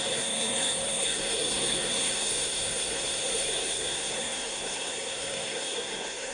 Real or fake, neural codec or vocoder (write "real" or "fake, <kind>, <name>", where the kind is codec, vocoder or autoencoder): fake, codec, SNAC